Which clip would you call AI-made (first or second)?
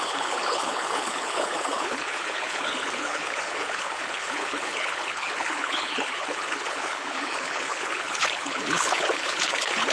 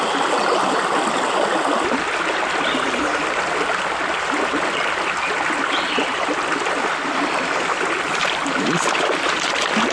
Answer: first